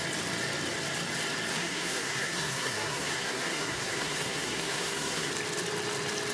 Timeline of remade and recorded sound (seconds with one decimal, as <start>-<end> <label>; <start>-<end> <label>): 0.0-1.5 recorded; 1.5-5.3 remade; 5.3-6.3 recorded